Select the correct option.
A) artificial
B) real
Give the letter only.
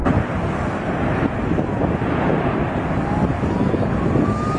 B